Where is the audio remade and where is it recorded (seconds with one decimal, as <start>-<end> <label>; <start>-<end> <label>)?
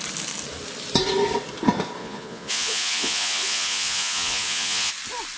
0.0-2.0 recorded; 2.0-4.9 remade; 4.9-5.4 recorded